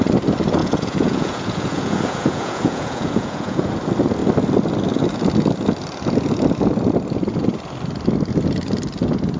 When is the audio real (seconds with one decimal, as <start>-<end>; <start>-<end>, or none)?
0.0-0.6; 3.7-9.4